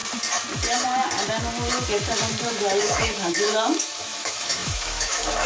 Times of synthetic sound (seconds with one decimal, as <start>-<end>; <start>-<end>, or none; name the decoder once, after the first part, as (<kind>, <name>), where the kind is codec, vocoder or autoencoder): 2.8-5.5 (autoencoder, DAC-VAE)